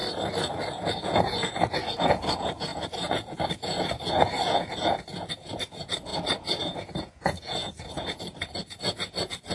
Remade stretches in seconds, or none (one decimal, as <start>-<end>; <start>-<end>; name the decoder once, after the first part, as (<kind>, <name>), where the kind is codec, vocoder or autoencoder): 0.7-9.5 (vocoder, Vocos)